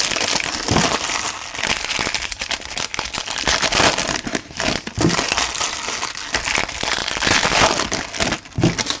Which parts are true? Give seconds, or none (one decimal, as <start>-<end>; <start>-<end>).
0.0-9.0